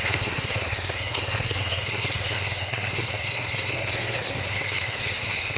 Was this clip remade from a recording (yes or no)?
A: yes